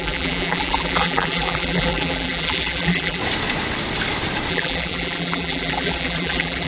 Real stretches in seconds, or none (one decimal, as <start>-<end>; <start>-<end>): 3.2-4.5

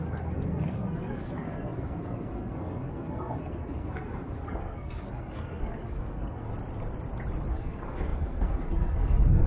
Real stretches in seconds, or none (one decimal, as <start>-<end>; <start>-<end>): 6.5-7.5

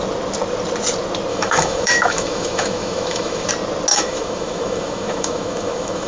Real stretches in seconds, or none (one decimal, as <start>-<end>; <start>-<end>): 0.0-1.3; 3.5-3.9

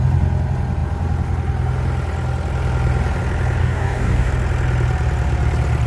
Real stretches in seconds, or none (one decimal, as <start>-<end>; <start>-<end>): 0.0-3.6; 4.3-5.9

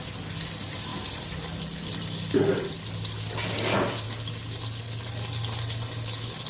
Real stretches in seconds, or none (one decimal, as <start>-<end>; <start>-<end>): 0.0-6.5